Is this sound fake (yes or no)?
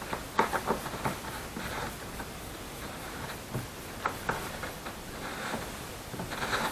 no